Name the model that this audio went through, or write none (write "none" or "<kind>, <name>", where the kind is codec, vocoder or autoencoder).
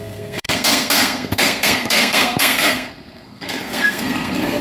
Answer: codec, SNAC